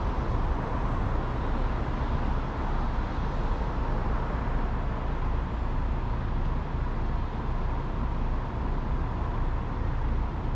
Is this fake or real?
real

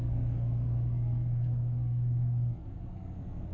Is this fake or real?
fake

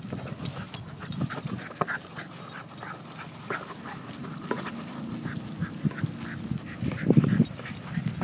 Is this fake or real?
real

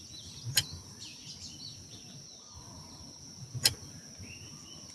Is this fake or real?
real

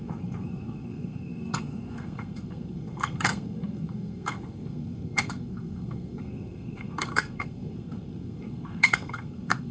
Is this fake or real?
fake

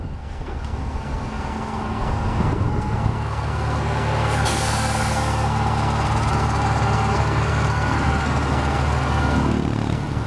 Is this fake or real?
fake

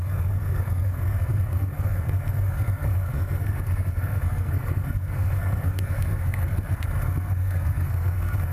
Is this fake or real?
fake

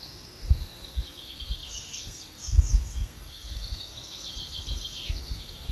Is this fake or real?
fake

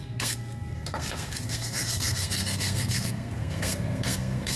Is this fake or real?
fake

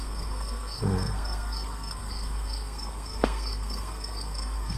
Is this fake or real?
fake